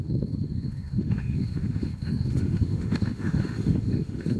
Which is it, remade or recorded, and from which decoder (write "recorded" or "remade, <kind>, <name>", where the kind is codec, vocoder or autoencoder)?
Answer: remade, autoencoder, DAC-VAE